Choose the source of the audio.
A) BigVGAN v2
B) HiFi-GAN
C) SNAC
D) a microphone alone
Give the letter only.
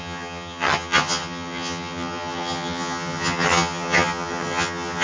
B